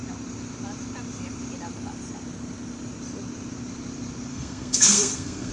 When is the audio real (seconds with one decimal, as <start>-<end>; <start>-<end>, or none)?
0.0-4.3